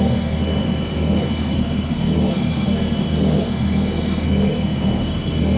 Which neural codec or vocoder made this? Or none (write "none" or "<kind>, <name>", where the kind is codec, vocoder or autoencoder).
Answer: codec, SNAC